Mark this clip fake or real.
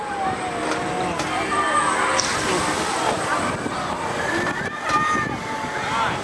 real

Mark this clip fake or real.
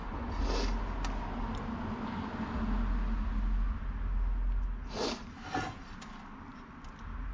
real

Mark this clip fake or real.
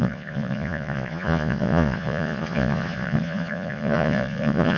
fake